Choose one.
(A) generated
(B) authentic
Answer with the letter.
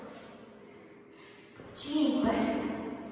B